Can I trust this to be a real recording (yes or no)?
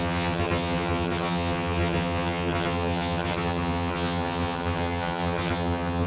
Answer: no